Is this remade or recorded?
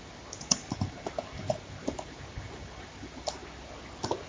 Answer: recorded